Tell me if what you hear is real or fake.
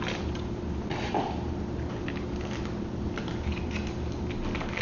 real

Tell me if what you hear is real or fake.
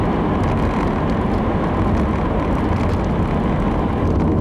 real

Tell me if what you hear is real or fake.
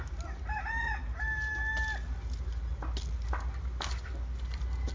real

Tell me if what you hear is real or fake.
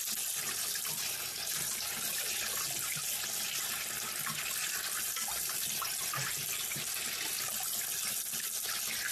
real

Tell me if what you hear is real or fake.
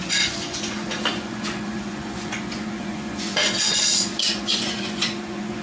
fake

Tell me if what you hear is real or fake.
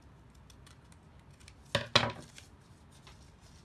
real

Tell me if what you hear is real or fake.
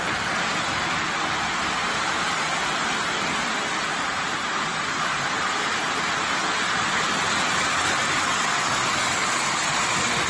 real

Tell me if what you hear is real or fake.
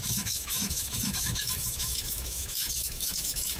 fake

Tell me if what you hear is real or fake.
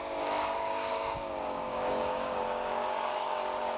fake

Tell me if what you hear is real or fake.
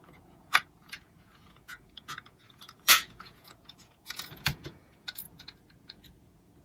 fake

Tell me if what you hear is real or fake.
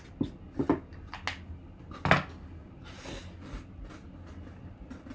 real